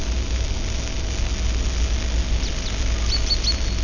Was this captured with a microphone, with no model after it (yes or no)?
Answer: yes